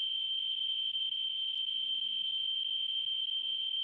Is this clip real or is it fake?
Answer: real